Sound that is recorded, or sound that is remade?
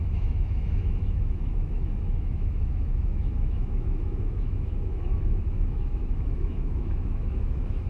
remade